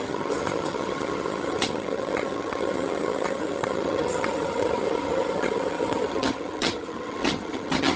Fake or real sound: fake